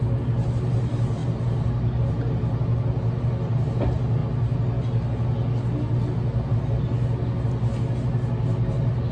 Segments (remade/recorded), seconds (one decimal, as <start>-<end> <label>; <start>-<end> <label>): 0.0-9.1 recorded